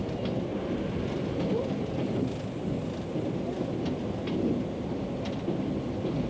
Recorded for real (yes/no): yes